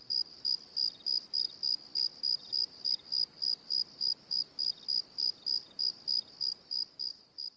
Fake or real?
real